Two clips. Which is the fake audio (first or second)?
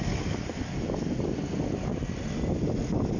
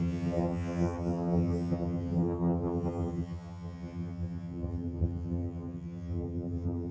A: second